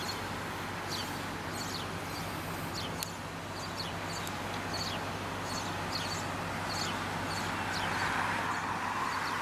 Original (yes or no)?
yes